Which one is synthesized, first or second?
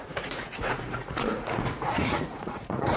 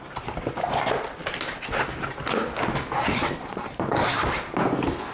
first